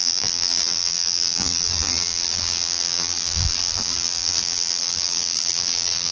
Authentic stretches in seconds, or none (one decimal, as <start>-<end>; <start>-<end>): none